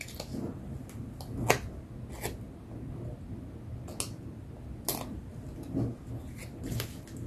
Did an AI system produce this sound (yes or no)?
no